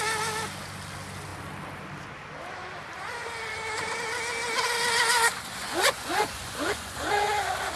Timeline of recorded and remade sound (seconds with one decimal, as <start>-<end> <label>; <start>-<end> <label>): 0.0-5.6 recorded; 5.6-7.1 remade; 7.1-7.8 recorded